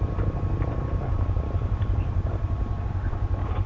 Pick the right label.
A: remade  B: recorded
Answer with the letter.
A